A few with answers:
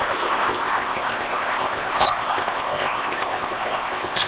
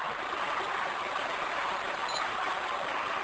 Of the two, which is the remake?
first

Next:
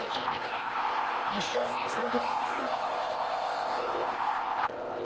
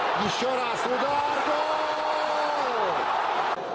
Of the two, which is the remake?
first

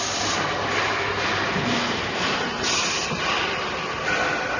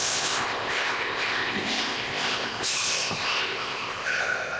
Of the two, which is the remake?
second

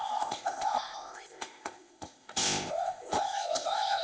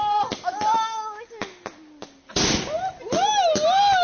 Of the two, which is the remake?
first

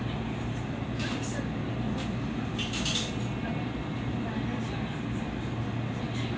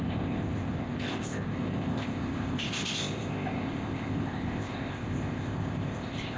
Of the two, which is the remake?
second